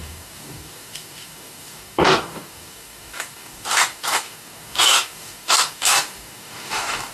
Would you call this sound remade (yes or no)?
yes